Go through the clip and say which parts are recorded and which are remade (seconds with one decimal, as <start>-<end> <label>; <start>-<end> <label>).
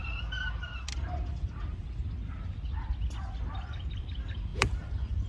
0.0-4.5 recorded; 4.5-5.3 remade